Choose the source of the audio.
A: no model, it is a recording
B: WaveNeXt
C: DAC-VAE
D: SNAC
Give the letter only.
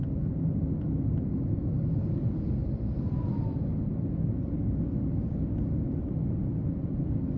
A